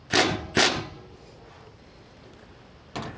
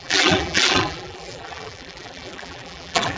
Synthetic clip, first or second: second